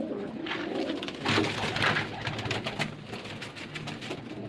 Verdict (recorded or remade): recorded